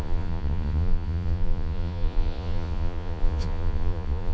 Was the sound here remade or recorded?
remade